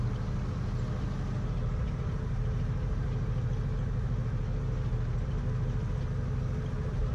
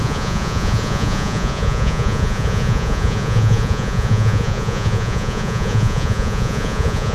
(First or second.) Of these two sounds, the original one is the first